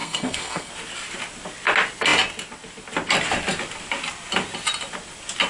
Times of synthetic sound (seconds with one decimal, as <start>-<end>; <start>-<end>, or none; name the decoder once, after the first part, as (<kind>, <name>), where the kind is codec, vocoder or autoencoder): 0.0-0.7 (codec, SNAC)